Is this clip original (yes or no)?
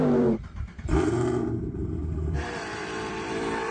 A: no